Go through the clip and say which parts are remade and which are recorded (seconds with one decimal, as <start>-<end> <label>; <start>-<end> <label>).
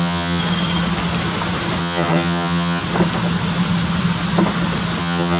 0.0-0.4 remade; 0.4-1.8 recorded; 1.8-2.8 remade; 2.8-5.0 recorded; 5.0-5.4 remade